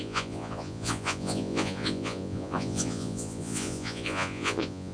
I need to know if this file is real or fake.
fake